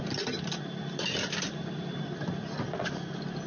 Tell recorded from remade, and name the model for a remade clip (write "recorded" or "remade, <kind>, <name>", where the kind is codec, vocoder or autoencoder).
recorded